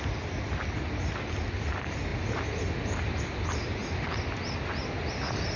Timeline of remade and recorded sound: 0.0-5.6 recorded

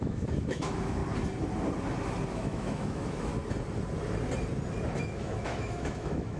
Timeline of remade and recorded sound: 0.0-1.0 remade; 1.0-2.3 recorded; 2.3-3.3 remade; 3.3-5.0 recorded; 5.0-6.4 remade

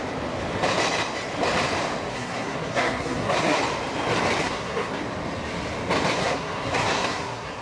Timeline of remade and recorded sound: 0.0-2.1 recorded; 2.1-3.6 remade; 3.6-4.4 recorded; 4.4-5.0 remade; 5.0-6.2 recorded; 6.2-7.6 remade

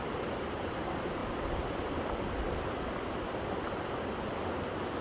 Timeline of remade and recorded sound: 0.0-5.0 recorded

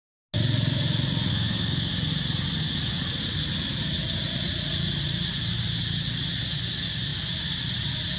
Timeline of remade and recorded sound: 0.0-1.3 recorded; 1.3-1.9 remade; 1.9-8.2 recorded

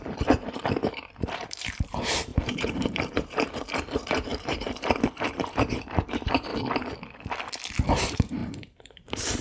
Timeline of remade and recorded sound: 0.0-6.5 remade; 6.5-8.0 recorded; 8.0-9.4 remade

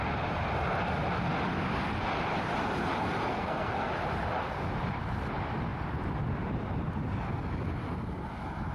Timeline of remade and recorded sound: 0.0-3.3 recorded; 3.3-3.9 remade; 3.9-8.7 recorded

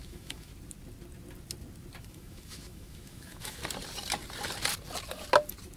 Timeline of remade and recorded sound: 0.0-0.5 remade; 0.5-2.0 recorded; 2.0-3.6 remade; 3.6-5.8 recorded